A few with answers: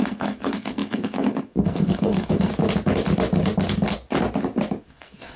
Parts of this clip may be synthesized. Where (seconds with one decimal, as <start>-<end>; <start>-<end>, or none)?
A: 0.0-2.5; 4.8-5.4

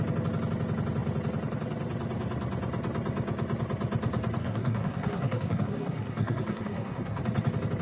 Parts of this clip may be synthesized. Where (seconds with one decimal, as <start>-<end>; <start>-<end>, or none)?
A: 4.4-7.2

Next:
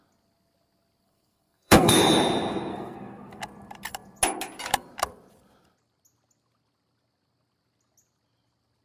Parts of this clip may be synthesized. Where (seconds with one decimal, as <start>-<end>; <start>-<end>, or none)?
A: 1.0-2.0; 2.7-3.4

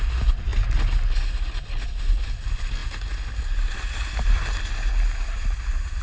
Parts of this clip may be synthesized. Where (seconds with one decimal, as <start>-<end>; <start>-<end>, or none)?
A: none

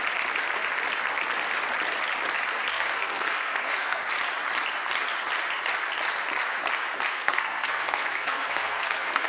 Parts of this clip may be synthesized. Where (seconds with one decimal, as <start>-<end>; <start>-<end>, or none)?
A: 2.7-4.0; 7.1-9.3